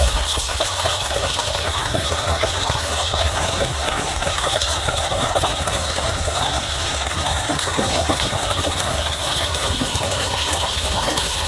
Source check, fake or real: fake